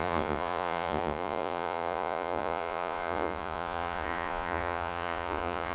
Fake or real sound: fake